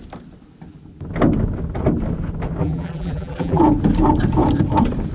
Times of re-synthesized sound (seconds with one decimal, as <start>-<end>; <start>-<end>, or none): 2.6-3.6